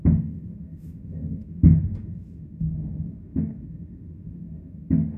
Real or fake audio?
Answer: fake